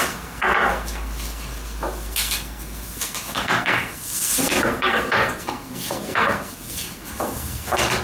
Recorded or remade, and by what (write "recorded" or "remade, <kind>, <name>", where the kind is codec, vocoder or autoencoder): remade, codec, SNAC